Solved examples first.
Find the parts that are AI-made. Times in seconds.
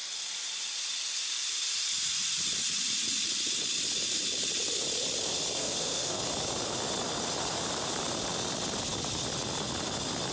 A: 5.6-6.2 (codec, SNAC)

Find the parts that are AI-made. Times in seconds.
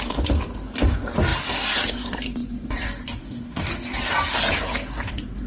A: 3.2-3.7 (autoencoder, DAC-VAE)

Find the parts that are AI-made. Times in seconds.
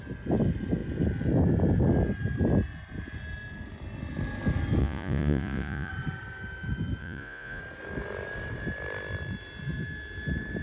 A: 4.8-5.9 (vocoder, Vocos); 7.0-7.6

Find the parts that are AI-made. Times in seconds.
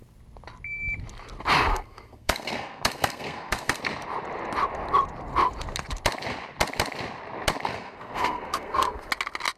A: 1.7-3.8 (codec, SNAC); 7.7-9.1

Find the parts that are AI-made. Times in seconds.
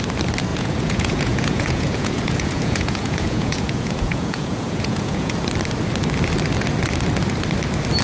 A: 0.5-5.3 (vocoder, Vocos)